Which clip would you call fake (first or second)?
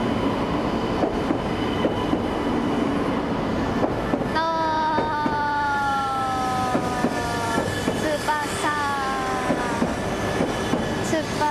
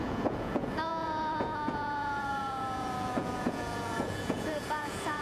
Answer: second